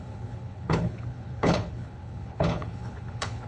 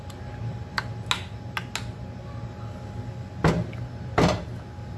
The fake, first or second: first